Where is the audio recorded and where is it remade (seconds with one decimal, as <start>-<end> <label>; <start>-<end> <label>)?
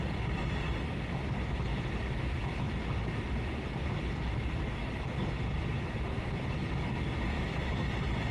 0.0-8.3 recorded